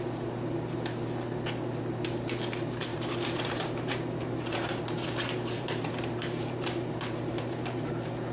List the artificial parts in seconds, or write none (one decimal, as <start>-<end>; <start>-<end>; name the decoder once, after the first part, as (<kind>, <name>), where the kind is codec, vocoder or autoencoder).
2.9-7.9 (vocoder, BigVGAN v2)